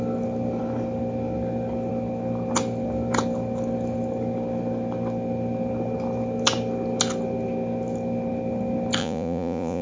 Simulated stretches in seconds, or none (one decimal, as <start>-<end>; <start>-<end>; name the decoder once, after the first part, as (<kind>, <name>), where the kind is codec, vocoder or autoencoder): 9.0-9.8 (vocoder, Vocos)